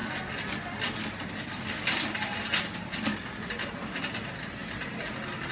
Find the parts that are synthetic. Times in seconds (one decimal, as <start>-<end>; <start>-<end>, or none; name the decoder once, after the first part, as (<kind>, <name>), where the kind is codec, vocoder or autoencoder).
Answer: none